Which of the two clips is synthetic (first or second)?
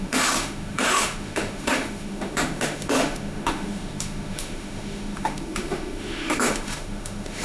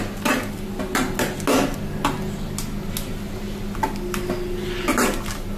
first